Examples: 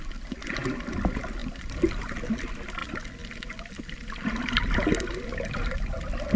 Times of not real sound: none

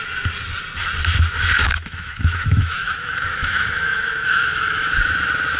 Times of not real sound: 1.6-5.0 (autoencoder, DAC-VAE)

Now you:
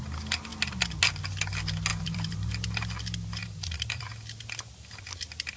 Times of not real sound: 1.9-2.5 (vocoder, BigVGAN v2); 3.4-4.1

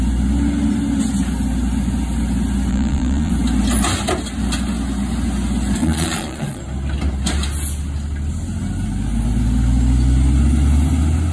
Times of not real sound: 2.7-3.3 (vocoder, Vocos); 5.8-6.6

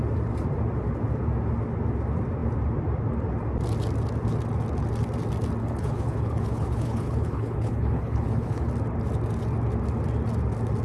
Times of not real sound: 5.6-8.7 (codec, HILCodec)

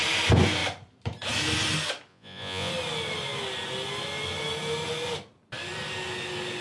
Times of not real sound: 2.1-2.7 (vocoder, Vocos)

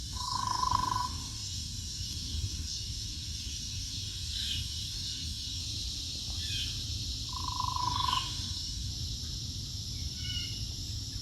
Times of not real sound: 0.0-5.6 (codec, DAC); 7.8-8.9